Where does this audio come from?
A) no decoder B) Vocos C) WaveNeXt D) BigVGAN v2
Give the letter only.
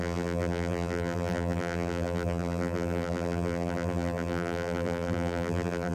D